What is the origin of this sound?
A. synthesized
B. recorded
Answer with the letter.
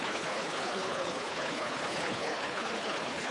A